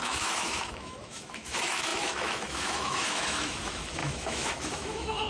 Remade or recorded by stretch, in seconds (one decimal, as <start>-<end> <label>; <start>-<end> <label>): 0.0-5.3 remade